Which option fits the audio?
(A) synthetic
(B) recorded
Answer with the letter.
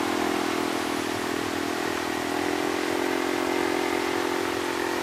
B